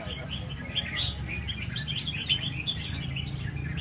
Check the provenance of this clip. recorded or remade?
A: recorded